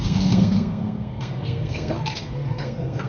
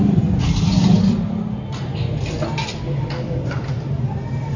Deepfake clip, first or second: first